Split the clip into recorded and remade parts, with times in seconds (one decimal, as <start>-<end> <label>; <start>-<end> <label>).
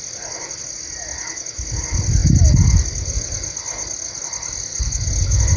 0.0-5.6 recorded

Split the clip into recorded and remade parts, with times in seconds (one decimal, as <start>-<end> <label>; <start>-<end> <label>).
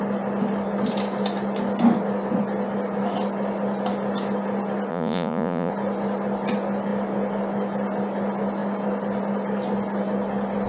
0.0-4.9 recorded; 4.9-5.7 remade; 5.7-10.7 recorded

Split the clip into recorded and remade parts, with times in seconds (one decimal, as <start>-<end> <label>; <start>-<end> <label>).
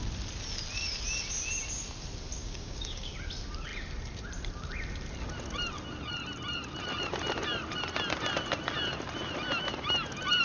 0.0-2.4 recorded; 2.4-3.1 remade; 3.1-10.4 recorded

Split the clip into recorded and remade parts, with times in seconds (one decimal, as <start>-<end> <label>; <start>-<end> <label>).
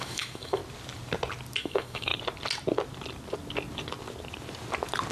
0.0-0.6 remade; 0.6-1.6 recorded; 1.6-2.1 remade; 2.1-5.1 recorded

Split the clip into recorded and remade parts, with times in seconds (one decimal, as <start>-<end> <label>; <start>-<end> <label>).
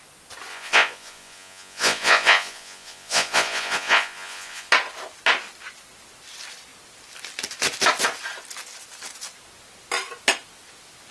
0.0-0.5 recorded; 0.5-4.7 remade; 4.7-11.1 recorded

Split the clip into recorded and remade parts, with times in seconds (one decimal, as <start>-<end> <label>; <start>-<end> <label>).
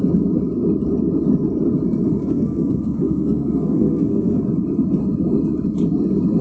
0.0-2.2 recorded; 2.2-4.4 remade; 4.4-6.4 recorded